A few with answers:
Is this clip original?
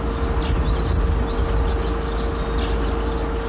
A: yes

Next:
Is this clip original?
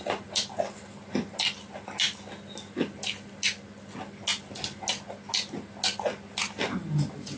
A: yes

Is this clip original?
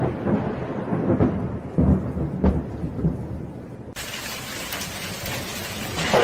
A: yes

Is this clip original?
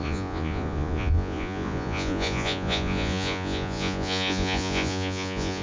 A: no